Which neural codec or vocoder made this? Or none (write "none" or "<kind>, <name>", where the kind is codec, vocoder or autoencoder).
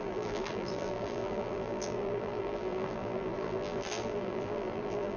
vocoder, BigVGAN v2